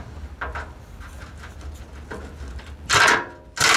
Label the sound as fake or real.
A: real